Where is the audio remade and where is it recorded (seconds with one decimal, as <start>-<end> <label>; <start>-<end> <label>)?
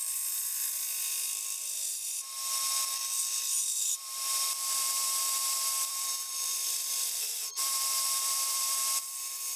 0.0-1.8 remade; 1.8-3.9 recorded; 3.9-9.6 remade